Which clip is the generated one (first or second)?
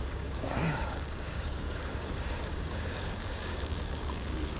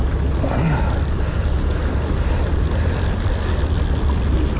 first